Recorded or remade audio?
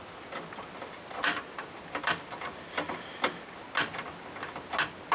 recorded